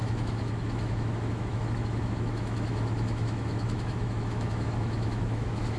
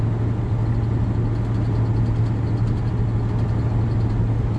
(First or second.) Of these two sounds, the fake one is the first